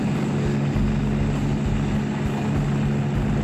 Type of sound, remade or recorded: recorded